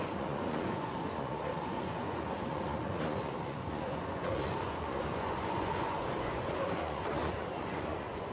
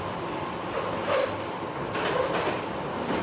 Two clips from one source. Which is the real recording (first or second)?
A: second